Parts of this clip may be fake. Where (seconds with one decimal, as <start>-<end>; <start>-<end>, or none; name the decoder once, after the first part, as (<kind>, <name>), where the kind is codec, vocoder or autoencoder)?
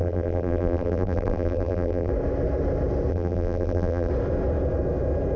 0.0-2.1 (vocoder, BigVGAN v2); 3.1-4.1